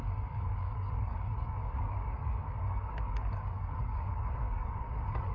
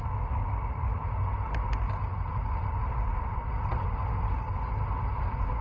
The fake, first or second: first